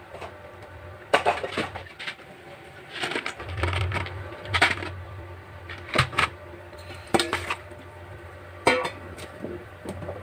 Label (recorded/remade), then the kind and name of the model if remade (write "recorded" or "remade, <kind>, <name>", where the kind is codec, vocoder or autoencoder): remade, vocoder, BigVGAN v2